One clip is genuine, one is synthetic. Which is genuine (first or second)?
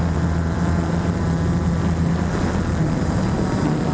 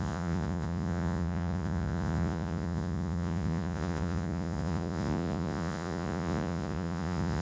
first